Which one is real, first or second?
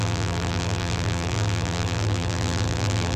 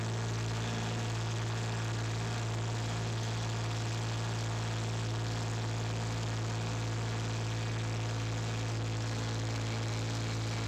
second